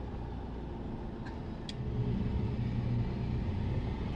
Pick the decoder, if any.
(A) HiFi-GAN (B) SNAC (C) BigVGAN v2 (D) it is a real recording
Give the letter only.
D